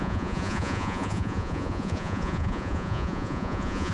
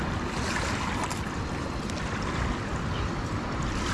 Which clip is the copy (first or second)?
first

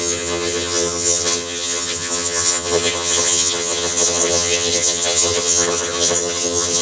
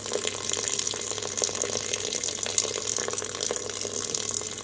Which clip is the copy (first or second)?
first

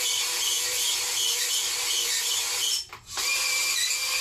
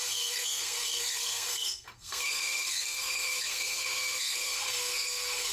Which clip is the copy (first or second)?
second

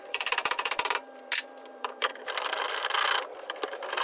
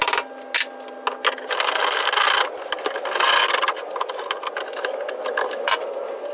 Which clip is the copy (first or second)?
first